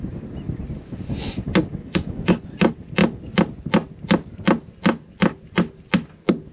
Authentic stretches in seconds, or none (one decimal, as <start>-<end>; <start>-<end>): 0.0-1.8; 2.4-6.5